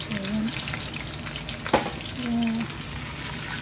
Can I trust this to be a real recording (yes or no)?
yes